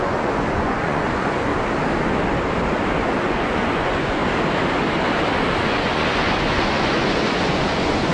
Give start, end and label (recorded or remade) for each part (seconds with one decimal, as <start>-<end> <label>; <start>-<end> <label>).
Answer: 0.0-1.5 remade; 1.5-3.0 recorded; 3.0-4.2 remade; 4.2-5.6 recorded; 5.6-8.1 remade